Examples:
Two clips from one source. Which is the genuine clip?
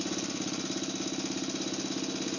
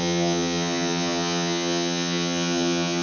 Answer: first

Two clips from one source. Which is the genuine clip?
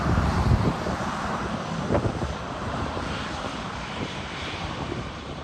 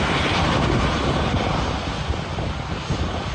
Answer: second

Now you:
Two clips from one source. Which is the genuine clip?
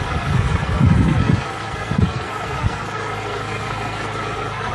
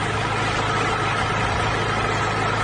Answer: second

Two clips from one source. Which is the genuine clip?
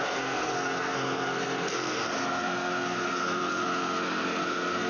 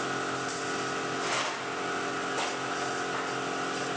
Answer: second